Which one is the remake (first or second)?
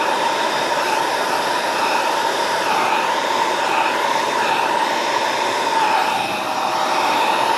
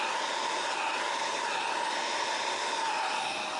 first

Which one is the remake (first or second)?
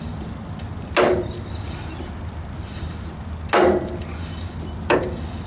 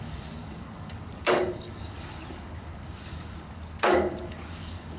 second